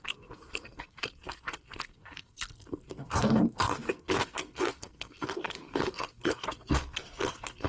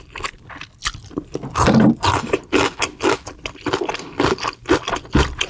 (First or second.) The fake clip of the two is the first